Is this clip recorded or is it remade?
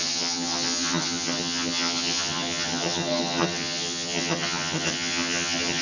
remade